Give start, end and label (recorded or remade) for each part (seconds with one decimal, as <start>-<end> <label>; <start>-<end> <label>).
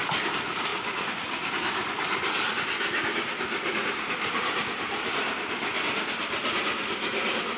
0.0-0.7 recorded; 0.7-1.5 remade; 1.5-7.6 recorded